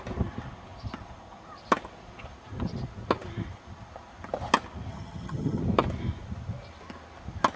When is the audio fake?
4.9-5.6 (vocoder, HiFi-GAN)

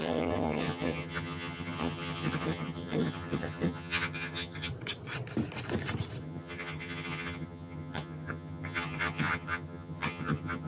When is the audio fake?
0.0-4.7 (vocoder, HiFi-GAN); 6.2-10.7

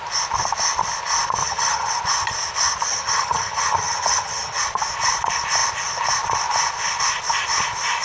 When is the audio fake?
1.4-1.9 (vocoder, HiFi-GAN); 2.9-4.6

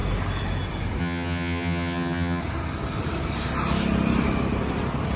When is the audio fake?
1.0-2.4 (vocoder, HiFi-GAN)

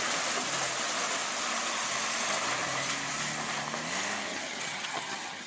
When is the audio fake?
4.3-5.5 (vocoder, HiFi-GAN)

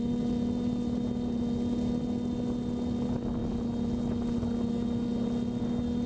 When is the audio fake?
none

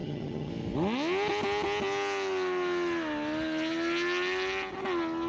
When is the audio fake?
0.0-0.5 (vocoder, HiFi-GAN)